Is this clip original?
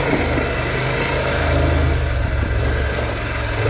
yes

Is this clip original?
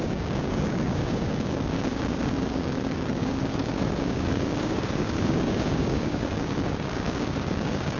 no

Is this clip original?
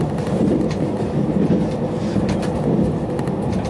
yes